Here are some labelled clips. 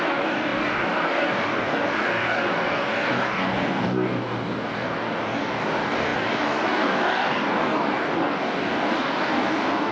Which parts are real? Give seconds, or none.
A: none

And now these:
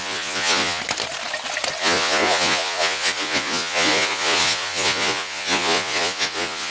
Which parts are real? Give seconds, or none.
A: 0.8-1.8

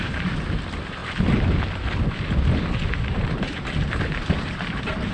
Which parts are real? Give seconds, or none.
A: 1.0-3.1

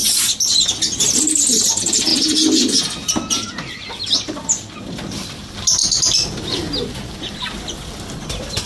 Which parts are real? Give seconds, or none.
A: 0.0-8.7

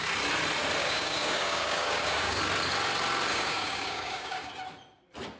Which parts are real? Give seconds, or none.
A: 0.0-0.8; 2.4-3.3; 4.5-5.4

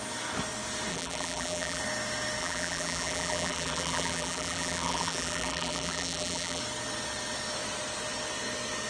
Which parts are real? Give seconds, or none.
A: 0.0-0.9; 1.8-2.4; 6.6-8.9